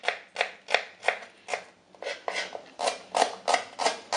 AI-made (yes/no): no